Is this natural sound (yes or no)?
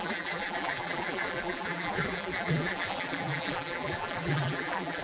no